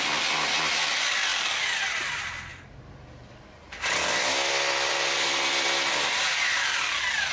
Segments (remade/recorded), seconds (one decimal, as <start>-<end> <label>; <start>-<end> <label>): 0.0-7.3 recorded